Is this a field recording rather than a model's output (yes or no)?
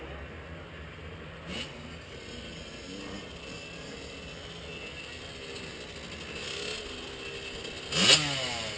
yes